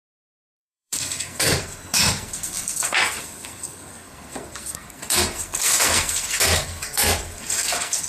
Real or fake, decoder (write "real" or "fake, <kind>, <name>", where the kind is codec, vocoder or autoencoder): fake, codec, SNAC